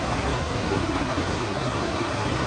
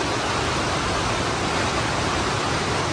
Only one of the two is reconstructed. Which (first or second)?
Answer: first